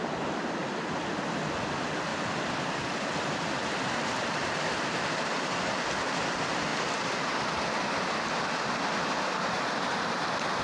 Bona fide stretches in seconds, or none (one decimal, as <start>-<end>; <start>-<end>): 0.0-2.1; 3.0-6.7; 8.1-10.6